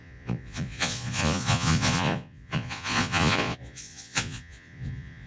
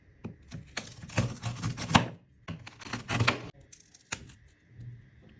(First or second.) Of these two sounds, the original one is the second